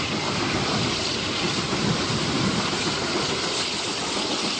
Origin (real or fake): real